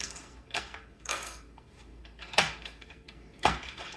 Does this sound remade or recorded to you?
remade